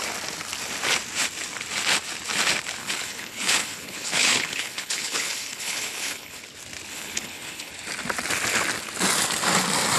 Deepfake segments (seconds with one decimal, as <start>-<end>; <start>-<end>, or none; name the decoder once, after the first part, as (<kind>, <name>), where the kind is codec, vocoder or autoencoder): 2.8-6.4 (codec, HILCodec); 6.9-7.7